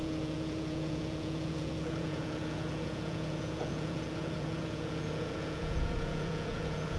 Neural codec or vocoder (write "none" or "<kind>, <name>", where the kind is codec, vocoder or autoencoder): vocoder, Vocos